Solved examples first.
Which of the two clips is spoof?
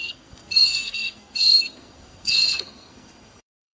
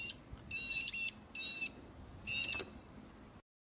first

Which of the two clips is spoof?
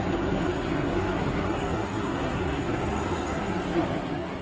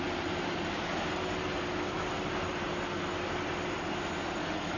first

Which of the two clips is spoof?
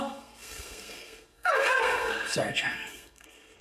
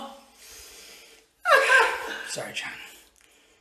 first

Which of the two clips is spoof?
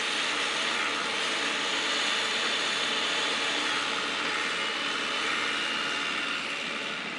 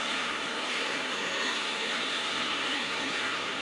second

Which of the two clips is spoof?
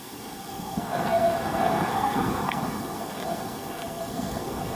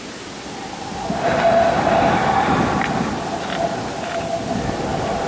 first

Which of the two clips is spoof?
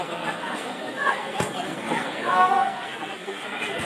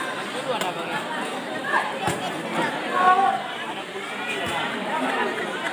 first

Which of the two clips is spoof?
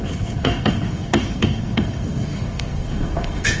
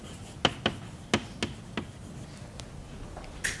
first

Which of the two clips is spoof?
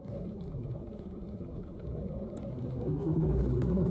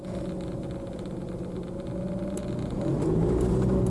first